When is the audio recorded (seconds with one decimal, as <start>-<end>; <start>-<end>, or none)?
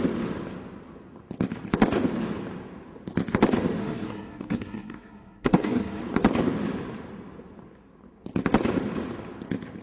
0.0-3.8; 6.0-9.8